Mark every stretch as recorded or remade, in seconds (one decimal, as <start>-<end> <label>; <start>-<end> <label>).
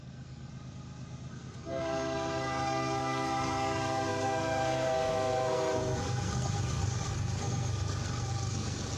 0.0-0.5 remade; 0.5-1.3 recorded; 1.3-9.0 remade